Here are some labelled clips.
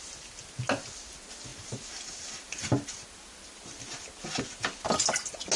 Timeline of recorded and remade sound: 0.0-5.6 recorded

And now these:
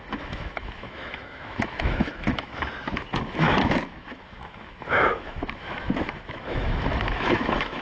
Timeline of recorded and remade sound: 0.0-2.5 remade; 2.5-3.0 recorded; 3.0-7.8 remade

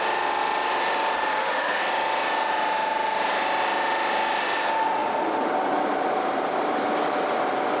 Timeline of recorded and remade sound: 0.0-1.3 recorded; 1.3-1.8 remade; 1.8-7.8 recorded

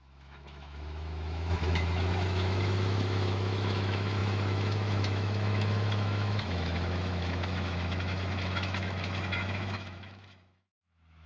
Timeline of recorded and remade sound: 0.0-11.3 remade

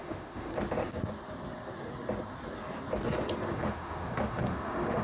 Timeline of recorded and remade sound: 0.0-0.5 remade; 0.5-3.5 recorded; 3.5-5.0 remade

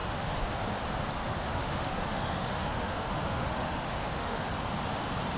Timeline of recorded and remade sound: 0.0-0.6 remade; 0.6-1.2 recorded; 1.2-4.4 remade; 4.4-5.4 recorded